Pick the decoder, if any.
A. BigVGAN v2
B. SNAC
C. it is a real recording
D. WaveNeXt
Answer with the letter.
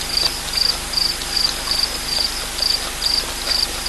C